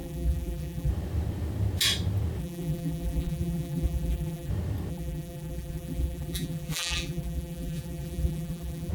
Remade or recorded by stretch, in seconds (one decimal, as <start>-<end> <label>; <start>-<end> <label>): 0.0-0.9 remade; 0.9-2.4 recorded; 2.4-4.5 remade; 4.5-4.9 recorded; 4.9-8.9 remade